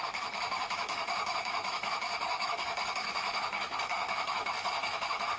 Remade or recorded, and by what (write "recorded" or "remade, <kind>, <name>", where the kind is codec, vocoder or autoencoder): remade, autoencoder, DAC-VAE